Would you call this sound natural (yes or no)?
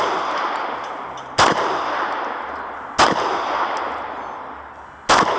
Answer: yes